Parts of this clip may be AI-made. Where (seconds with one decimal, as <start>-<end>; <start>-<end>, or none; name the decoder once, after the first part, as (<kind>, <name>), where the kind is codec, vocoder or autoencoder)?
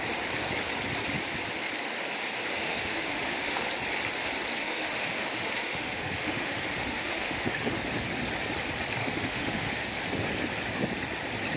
2.5-3.6 (autoencoder, DAC-VAE); 4.6-7.8; 9.0-10.0